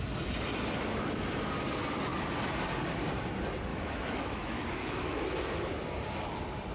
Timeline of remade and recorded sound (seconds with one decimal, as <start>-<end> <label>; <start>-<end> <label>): 0.0-3.7 recorded; 3.7-5.7 remade; 5.7-6.7 recorded